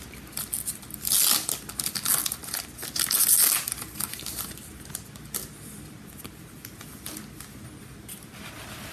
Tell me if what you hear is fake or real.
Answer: real